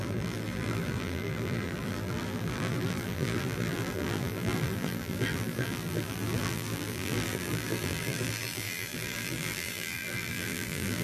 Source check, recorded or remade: remade